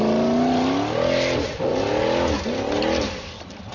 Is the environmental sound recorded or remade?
recorded